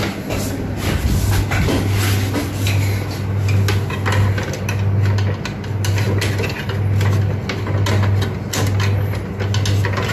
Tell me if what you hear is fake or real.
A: real